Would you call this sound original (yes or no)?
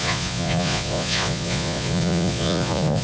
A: no